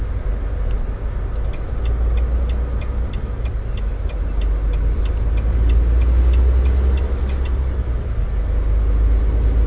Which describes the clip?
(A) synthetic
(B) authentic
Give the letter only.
B